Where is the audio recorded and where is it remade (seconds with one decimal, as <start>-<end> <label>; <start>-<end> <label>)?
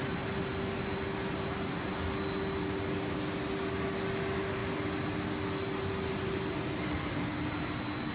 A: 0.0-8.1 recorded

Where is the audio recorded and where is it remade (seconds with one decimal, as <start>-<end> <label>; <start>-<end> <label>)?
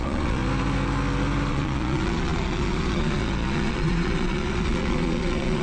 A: 0.0-0.4 remade; 0.4-1.5 recorded; 1.5-5.6 remade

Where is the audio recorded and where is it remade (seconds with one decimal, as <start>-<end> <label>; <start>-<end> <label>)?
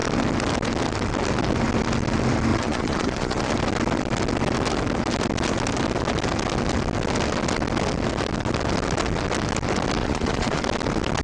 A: 0.0-2.5 recorded; 2.5-3.5 remade; 3.5-10.0 recorded; 10.0-10.6 remade; 10.6-11.2 recorded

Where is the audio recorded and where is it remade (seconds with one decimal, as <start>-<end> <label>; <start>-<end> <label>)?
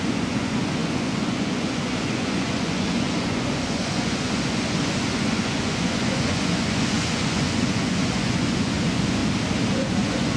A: 0.0-9.2 remade; 9.2-9.7 recorded; 9.7-10.4 remade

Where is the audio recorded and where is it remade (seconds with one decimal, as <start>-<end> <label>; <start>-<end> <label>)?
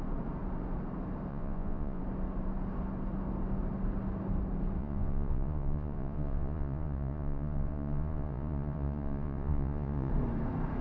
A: 0.0-1.3 recorded; 1.3-2.0 remade; 2.0-4.8 recorded; 4.8-10.1 remade; 10.1-10.8 recorded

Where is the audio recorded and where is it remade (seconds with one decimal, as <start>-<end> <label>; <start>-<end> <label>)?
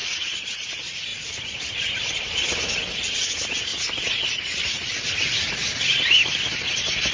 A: 0.0-0.7 remade; 0.7-7.1 recorded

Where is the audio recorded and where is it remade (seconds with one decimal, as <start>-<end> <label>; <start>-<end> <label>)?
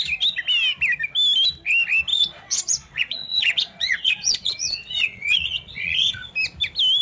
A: 0.0-2.1 recorded; 2.1-6.3 remade; 6.3-7.0 recorded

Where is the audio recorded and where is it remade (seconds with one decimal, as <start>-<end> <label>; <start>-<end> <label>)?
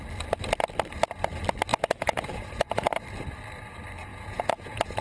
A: 0.0-1.7 recorded; 1.7-2.9 remade; 2.9-4.1 recorded; 4.1-5.0 remade